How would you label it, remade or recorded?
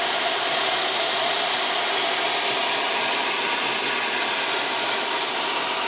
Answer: recorded